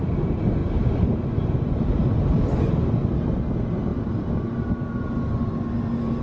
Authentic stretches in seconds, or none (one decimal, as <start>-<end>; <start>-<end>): 0.0-0.6; 2.0-3.9; 5.6-6.2